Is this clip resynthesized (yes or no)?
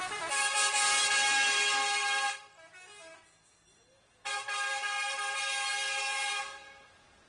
no